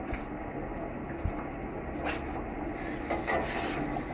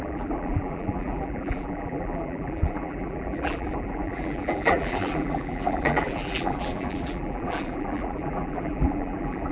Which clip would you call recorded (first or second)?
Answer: first